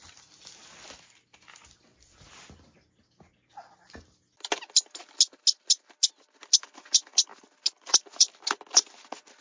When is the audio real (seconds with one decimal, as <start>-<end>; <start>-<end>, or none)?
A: 0.0-9.4